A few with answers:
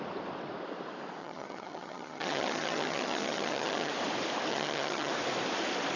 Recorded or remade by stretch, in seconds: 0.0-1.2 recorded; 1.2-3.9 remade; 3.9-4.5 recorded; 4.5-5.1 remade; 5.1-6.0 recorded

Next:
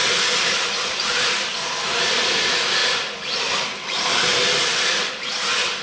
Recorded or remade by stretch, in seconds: 0.0-5.8 recorded

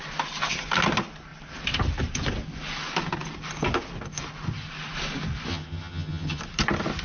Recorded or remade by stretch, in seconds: 0.0-5.5 recorded; 5.5-6.4 remade; 6.4-7.0 recorded

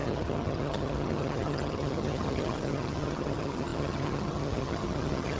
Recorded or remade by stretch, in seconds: 0.0-5.4 remade